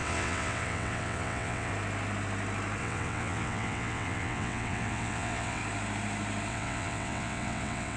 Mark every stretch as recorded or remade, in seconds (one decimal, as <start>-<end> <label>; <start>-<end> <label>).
0.0-1.7 remade; 1.7-2.8 recorded; 2.8-5.6 remade; 5.6-6.5 recorded; 6.5-8.0 remade